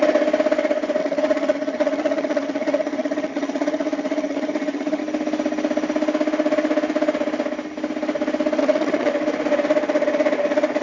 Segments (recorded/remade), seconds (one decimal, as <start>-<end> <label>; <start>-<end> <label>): 0.0-1.0 recorded; 1.0-5.0 remade; 5.0-8.6 recorded; 8.6-9.1 remade; 9.1-10.8 recorded